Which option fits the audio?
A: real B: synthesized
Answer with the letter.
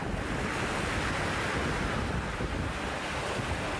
A